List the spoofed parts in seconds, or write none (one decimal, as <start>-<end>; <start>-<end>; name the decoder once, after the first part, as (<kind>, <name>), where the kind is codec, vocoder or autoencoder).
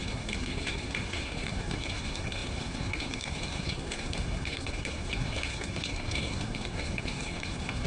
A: 0.0-7.9 (codec, SNAC)